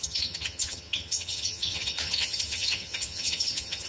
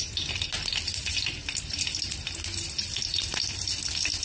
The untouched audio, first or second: second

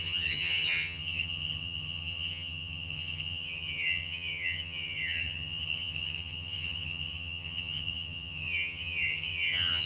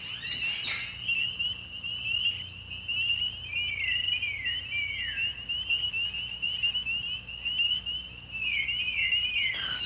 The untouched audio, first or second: second